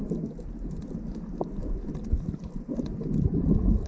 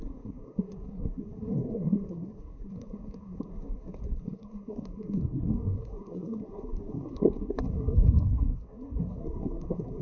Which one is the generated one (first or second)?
second